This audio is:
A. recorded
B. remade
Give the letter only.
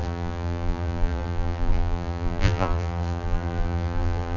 B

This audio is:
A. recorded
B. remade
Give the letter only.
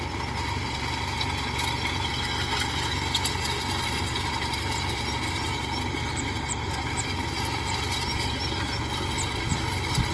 A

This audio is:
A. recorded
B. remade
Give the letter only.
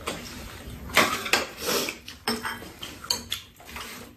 B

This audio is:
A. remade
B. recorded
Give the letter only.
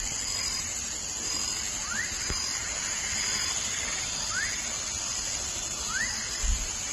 B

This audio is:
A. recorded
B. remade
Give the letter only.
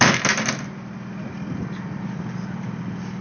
A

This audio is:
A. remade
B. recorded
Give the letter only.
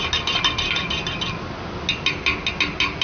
B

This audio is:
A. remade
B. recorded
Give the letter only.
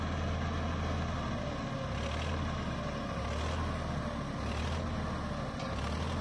B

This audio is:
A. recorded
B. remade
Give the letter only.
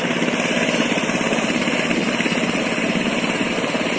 B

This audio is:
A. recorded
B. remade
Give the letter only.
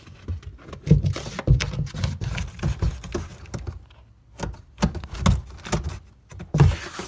A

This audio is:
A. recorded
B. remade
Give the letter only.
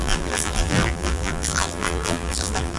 B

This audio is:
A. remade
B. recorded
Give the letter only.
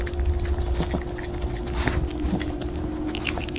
B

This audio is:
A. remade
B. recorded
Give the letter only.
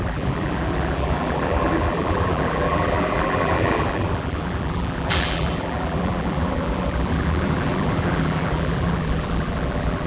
A